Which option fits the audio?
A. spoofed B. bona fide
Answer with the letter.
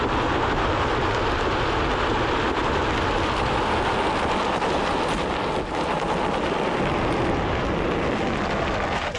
B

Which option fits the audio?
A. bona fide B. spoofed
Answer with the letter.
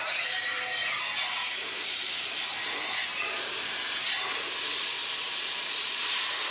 A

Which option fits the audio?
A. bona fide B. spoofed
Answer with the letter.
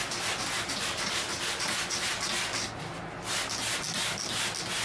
A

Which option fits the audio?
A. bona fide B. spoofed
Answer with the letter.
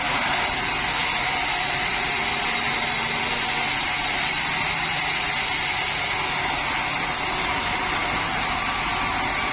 A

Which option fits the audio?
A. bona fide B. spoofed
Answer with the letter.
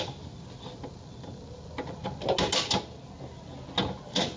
A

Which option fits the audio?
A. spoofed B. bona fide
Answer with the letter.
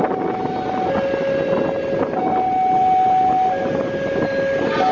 B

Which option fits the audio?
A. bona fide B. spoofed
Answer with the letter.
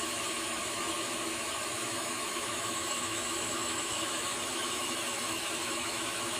B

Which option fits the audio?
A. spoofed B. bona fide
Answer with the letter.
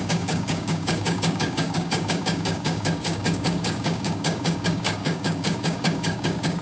A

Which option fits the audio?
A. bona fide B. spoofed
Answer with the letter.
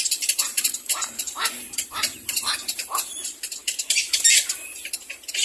B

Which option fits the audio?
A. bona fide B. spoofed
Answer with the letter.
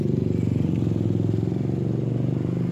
A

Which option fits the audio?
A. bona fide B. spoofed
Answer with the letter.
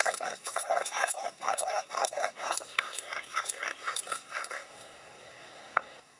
B